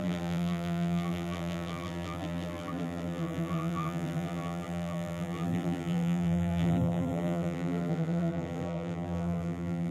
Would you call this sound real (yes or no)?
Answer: no